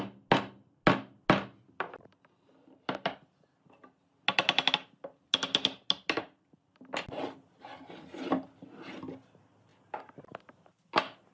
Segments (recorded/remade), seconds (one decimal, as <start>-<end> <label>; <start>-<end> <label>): 0.0-11.3 recorded

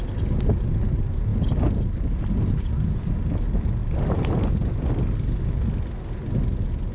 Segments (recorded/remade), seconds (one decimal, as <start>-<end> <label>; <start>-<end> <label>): 0.0-6.9 recorded